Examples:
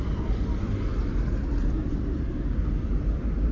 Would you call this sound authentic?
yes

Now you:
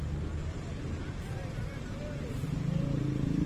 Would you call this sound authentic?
yes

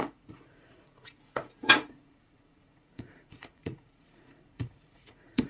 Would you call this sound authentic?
no